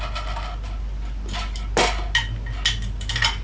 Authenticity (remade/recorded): recorded